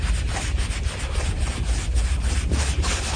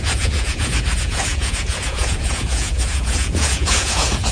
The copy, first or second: second